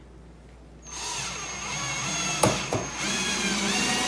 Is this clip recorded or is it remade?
recorded